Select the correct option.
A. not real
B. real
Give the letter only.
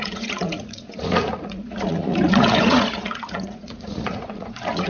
A